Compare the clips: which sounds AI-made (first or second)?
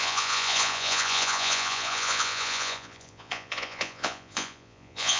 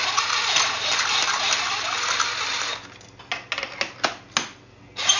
first